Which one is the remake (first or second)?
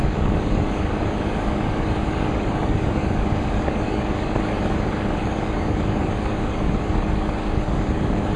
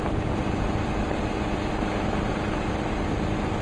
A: first